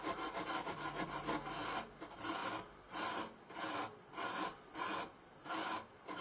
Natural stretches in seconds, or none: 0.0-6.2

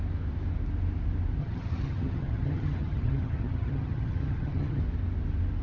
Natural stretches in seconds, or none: 0.0-1.4; 4.8-5.6

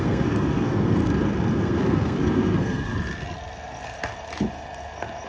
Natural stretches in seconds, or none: 1.0-1.5; 2.9-5.3

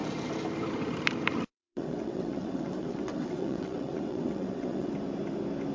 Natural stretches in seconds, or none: 0.0-1.5; 4.9-5.7

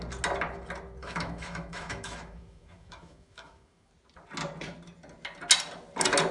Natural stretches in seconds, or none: 0.0-1.0; 3.9-6.3

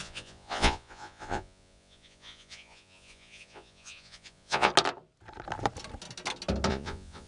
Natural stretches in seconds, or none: 4.7-6.7

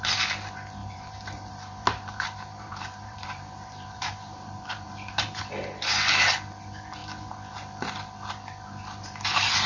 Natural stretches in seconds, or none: 0.0-0.8; 5.4-9.7

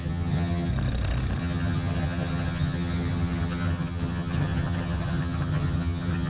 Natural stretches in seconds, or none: 0.7-1.4